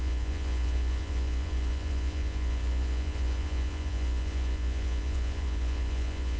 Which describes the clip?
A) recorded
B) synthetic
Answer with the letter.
B